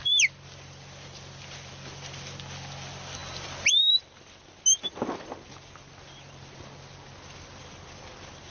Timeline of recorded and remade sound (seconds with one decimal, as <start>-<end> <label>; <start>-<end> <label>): 0.0-8.5 recorded